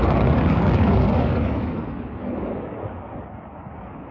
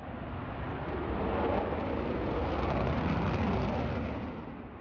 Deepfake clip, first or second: first